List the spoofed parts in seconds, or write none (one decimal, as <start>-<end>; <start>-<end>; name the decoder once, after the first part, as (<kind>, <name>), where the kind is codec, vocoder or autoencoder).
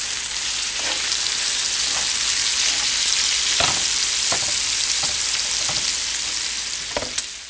0.0-1.1 (vocoder, BigVGAN v2)